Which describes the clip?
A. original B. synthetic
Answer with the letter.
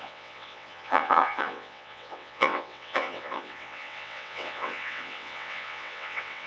B